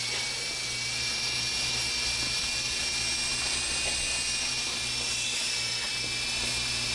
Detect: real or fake real